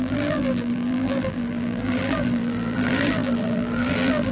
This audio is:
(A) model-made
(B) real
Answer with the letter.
A